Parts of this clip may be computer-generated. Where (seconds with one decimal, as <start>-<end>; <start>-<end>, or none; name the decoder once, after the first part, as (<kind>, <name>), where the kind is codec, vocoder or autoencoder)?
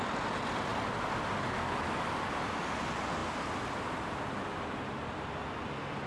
none